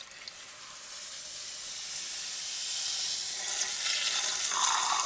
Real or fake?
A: real